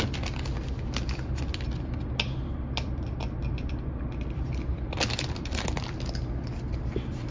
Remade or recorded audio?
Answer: recorded